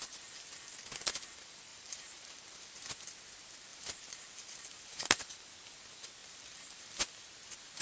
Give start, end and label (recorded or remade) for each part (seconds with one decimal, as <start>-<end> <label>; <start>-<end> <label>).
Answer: 0.0-1.7 recorded; 1.7-2.8 remade; 2.8-3.7 recorded; 3.7-5.3 remade; 5.3-6.2 recorded; 6.2-7.1 remade; 7.1-7.8 recorded